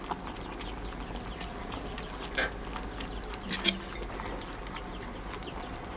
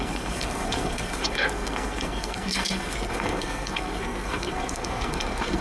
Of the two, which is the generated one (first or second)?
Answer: second